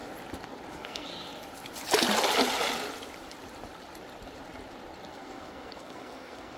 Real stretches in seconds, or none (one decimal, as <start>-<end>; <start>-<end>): 0.0-0.7; 1.1-5.1

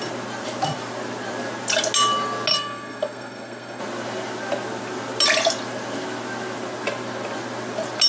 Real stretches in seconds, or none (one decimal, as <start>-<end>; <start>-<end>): 0.0-2.5; 3.8-8.1

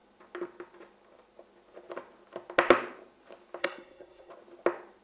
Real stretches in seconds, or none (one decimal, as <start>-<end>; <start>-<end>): 0.0-3.6; 4.3-5.0

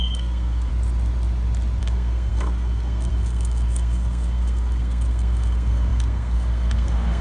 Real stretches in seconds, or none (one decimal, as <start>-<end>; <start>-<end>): 0.7-1.8

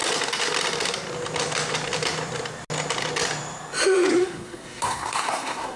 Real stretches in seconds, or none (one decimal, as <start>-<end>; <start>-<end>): 0.0-4.1

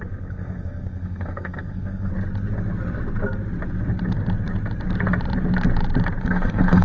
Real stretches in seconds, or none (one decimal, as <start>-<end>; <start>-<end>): 2.1-6.2

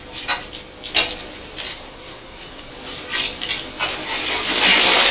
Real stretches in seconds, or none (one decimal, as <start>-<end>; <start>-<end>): 0.0-1.7; 2.7-5.1

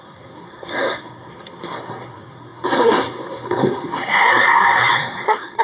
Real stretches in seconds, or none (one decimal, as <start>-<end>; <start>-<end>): none